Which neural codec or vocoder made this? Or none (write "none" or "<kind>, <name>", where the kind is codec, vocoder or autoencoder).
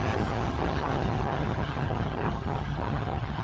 vocoder, HiFi-GAN